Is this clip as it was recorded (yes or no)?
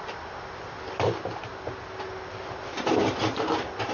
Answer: yes